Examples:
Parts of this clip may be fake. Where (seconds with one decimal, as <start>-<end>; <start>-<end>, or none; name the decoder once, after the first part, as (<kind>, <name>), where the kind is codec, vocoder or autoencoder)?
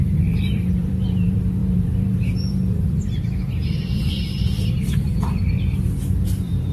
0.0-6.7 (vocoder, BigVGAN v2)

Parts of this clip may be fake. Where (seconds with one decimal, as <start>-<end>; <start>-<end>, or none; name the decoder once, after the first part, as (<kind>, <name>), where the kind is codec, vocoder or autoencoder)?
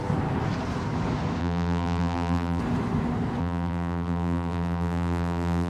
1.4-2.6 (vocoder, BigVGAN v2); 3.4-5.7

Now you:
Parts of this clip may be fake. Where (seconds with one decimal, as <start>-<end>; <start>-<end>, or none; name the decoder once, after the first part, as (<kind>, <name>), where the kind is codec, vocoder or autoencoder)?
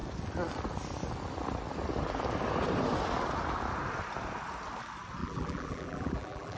5.2-6.6 (vocoder, BigVGAN v2)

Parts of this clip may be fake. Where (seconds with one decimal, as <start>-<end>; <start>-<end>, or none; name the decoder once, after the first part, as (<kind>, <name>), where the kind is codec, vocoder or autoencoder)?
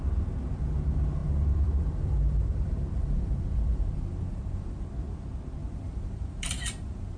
1.2-4.9 (vocoder, BigVGAN v2); 5.6-7.2